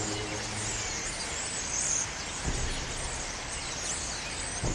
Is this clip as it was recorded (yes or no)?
yes